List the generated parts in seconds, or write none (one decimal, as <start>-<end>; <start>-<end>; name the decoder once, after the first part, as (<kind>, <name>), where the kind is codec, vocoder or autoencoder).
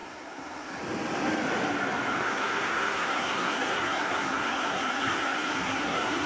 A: 0.0-0.8 (codec, SNAC); 2.2-6.3